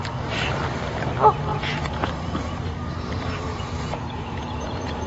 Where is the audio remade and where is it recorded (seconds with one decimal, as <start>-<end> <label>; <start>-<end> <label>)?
0.0-1.5 recorded; 1.5-2.1 remade; 2.1-3.5 recorded; 3.5-5.1 remade